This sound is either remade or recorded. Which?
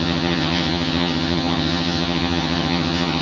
remade